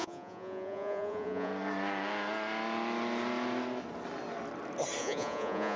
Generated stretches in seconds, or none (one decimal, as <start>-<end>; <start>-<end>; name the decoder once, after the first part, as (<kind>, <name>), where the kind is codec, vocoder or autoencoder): 0.0-1.5 (vocoder, Vocos); 5.0-5.8